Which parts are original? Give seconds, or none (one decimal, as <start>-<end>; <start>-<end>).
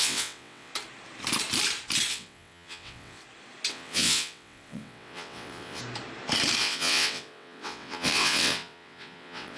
0.7-2.1; 3.2-3.7; 5.8-6.6